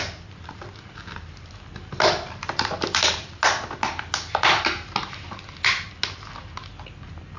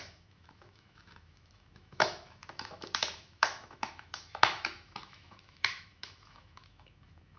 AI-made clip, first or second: second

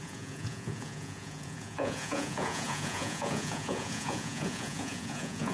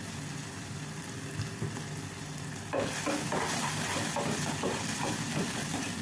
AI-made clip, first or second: first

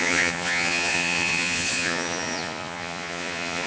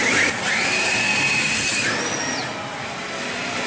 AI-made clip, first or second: first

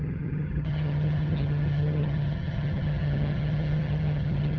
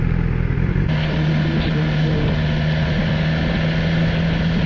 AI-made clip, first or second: first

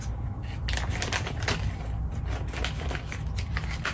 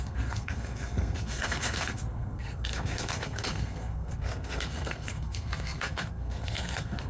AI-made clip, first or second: second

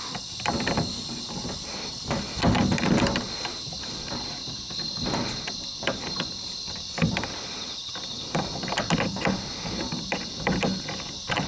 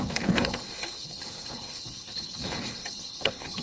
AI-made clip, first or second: second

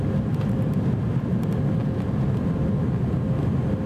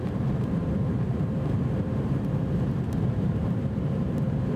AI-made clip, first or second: second